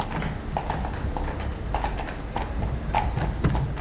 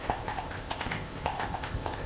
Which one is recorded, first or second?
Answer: first